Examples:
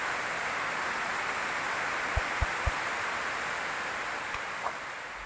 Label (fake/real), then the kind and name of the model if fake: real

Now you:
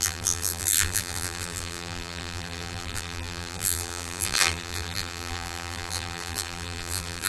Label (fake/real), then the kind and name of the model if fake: fake, vocoder, BigVGAN v2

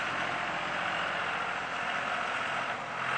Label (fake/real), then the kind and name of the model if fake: real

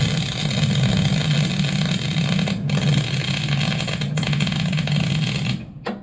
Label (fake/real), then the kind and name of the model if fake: real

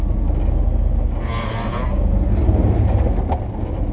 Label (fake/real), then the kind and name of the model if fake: real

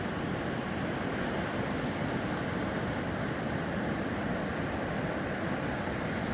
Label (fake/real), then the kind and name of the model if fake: fake, vocoder, BigVGAN v2